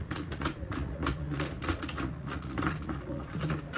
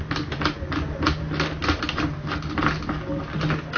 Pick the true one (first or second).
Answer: second